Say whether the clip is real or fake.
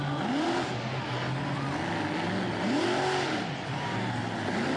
real